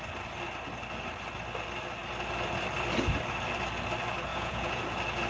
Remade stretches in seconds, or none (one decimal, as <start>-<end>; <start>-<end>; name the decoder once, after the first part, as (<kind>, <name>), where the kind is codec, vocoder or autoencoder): 4.3-4.8 (vocoder, Vocos)